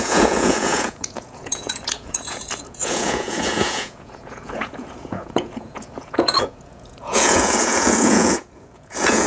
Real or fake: fake